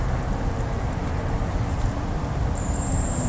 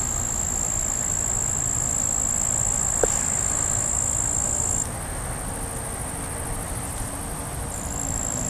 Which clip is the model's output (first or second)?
first